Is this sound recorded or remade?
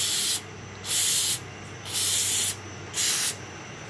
recorded